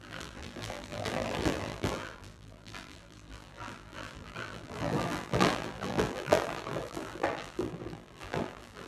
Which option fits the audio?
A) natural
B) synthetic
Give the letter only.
B